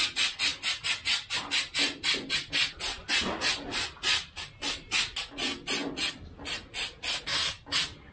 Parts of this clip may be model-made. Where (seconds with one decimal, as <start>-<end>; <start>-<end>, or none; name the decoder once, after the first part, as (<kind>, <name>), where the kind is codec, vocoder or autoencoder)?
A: none